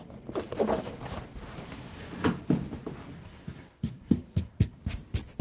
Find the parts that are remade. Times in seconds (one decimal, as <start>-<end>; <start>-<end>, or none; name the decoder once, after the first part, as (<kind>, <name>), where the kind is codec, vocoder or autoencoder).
3.2-4.8 (codec, SNAC)